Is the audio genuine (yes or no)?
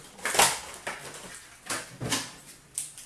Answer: yes